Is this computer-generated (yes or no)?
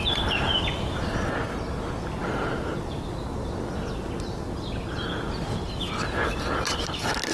no